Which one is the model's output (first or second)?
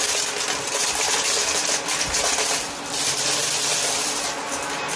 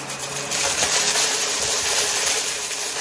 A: second